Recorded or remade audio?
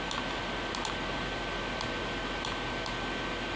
recorded